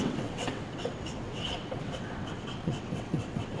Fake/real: fake